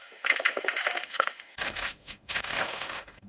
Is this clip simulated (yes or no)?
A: yes